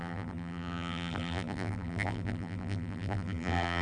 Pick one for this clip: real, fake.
fake